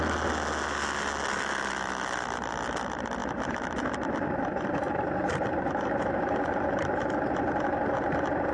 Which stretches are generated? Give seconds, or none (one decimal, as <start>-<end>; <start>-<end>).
none